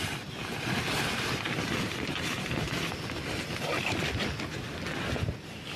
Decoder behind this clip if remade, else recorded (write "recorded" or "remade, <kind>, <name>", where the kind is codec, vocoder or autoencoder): recorded